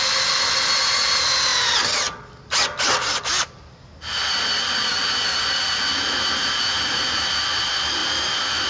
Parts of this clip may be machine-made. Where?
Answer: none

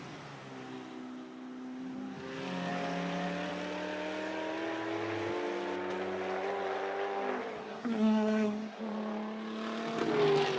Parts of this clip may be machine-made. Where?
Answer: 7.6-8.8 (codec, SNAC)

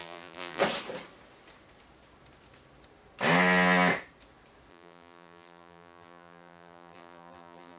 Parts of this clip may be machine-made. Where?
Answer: 0.0-0.6 (vocoder, BigVGAN v2); 4.7-7.8

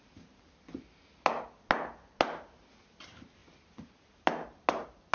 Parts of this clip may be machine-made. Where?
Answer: none

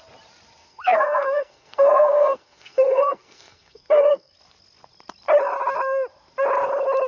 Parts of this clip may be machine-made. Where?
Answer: 0.6-4.3 (codec, SNAC)

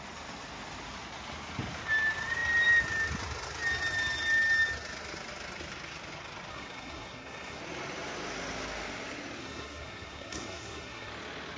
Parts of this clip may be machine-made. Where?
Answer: 6.5-7.6 (codec, SNAC); 9.4-11.1

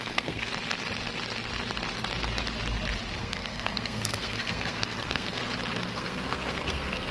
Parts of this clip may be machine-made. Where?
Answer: 0.0-0.5 (codec, SNAC); 3.2-5.4; 5.9-7.1